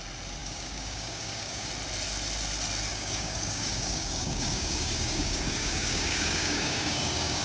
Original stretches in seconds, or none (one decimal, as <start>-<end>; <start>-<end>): 0.0-0.4; 1.7-2.9